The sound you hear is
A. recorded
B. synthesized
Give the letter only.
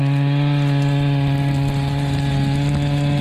A